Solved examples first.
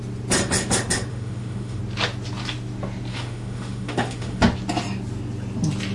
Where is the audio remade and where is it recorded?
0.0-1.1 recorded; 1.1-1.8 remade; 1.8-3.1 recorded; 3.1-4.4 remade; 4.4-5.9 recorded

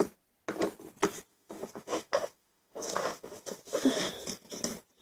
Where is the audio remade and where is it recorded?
0.0-1.3 recorded; 1.3-4.1 remade; 4.1-5.0 recorded